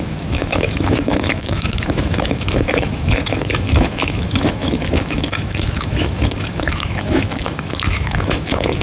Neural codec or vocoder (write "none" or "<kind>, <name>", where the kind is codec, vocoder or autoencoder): autoencoder, DAC-VAE